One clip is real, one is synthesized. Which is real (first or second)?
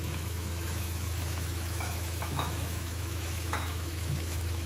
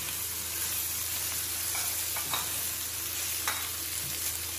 second